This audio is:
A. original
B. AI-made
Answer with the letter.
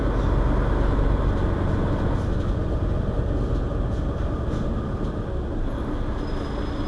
A